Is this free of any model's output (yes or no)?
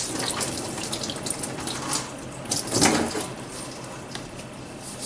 yes